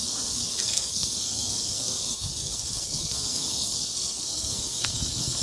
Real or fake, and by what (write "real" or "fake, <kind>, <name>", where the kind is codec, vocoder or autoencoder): fake, codec, SNAC